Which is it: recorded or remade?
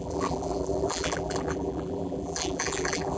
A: remade